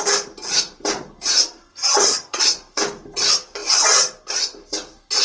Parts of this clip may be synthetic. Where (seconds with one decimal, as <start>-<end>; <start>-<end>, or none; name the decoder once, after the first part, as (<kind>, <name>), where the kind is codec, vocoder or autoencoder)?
1.7-2.4 (vocoder, HiFi-GAN)